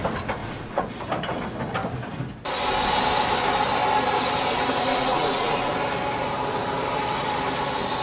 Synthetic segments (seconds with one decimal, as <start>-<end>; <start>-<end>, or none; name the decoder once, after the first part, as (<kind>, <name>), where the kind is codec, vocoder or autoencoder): 0.4-0.9 (vocoder, Vocos); 4.9-5.7